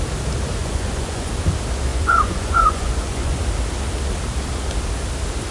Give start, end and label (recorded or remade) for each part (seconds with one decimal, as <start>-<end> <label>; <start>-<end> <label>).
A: 0.0-0.6 recorded; 0.6-1.3 remade; 1.3-1.9 recorded; 1.9-3.4 remade; 3.4-5.5 recorded